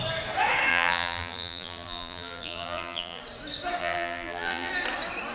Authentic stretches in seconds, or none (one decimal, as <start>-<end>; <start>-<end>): 0.0-0.7; 3.2-3.8; 4.7-5.3

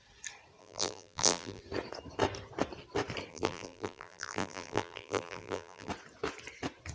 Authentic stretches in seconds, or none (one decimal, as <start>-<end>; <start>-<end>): 0.0-0.6; 1.6-3.3; 5.9-6.9

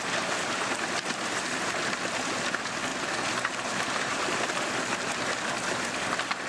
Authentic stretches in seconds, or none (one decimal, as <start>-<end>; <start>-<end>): 0.0-1.3; 1.8-2.9; 4.7-6.5

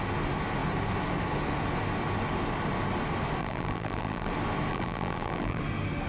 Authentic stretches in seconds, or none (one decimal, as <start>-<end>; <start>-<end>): 0.0-3.4; 4.3-4.7; 5.6-6.1

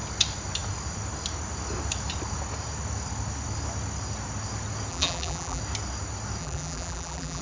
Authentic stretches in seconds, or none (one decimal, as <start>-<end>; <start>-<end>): 0.0-4.9; 5.6-6.4

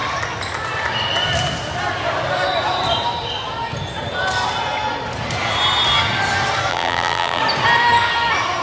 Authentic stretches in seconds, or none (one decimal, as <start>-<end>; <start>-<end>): 0.0-6.7; 7.4-8.6